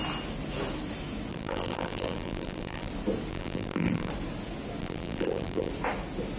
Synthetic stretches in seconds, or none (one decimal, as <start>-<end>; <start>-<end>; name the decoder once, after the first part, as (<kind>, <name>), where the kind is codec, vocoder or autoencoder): 1.3-2.9 (vocoder, BigVGAN v2); 3.3-4.1; 4.8-5.7